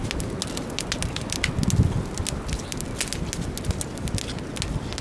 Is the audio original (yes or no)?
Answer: yes